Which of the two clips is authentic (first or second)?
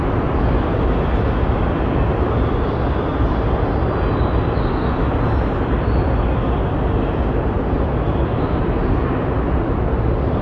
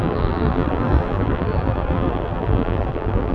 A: first